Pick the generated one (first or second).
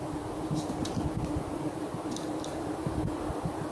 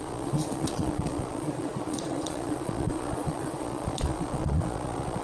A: second